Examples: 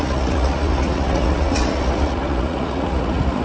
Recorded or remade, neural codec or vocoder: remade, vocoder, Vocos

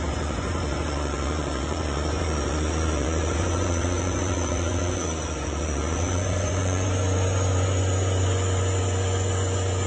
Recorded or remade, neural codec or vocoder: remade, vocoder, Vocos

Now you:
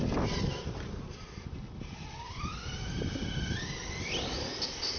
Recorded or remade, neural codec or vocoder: recorded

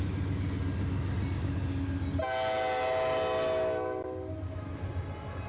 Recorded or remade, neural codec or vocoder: recorded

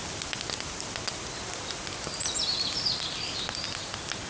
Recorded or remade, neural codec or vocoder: recorded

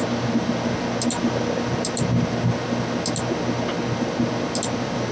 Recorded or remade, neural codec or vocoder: recorded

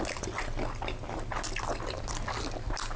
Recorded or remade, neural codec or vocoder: recorded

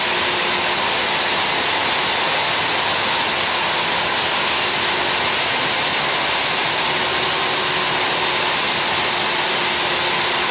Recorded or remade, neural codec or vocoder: recorded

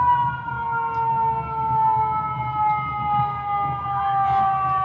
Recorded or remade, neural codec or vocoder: recorded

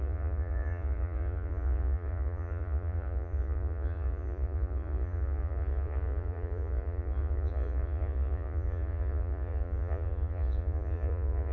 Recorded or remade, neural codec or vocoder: remade, vocoder, Vocos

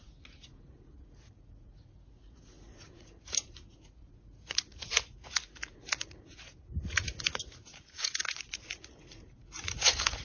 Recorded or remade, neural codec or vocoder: remade, vocoder, Vocos